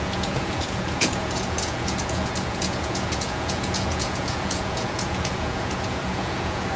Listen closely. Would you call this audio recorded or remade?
remade